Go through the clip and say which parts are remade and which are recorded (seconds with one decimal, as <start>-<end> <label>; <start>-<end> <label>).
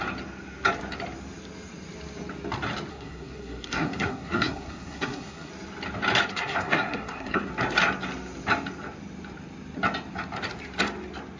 0.0-2.9 recorded; 2.9-5.5 remade; 5.5-6.3 recorded; 6.3-7.5 remade; 7.5-11.4 recorded